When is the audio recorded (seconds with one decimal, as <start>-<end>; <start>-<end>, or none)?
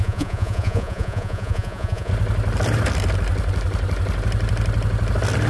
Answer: 2.1-5.5